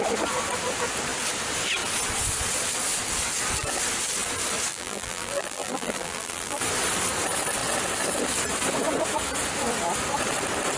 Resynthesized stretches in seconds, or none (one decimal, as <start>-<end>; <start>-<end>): 4.7-6.6